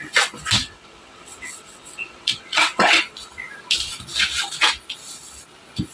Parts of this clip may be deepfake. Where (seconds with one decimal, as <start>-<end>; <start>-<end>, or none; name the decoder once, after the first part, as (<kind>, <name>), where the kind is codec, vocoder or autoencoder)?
0.6-3.0 (vocoder, WaveNeXt)